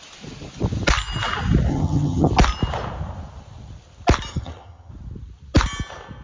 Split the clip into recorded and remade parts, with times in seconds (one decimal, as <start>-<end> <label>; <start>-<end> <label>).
0.0-1.7 recorded; 1.7-2.3 remade; 2.3-4.3 recorded; 4.3-4.9 remade; 4.9-6.2 recorded